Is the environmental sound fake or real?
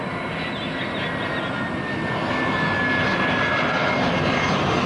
real